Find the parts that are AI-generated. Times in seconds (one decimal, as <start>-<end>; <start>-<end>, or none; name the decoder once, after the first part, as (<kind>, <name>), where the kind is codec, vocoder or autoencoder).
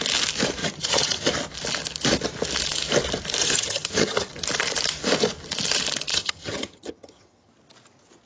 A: 0.6-1.3 (vocoder, HiFi-GAN); 3.4-4.3; 6.1-7.5